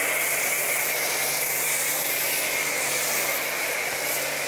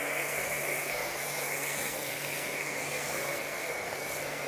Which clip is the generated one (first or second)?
second